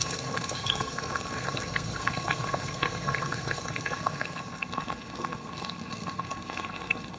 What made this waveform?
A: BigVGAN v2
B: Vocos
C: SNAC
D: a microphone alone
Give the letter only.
C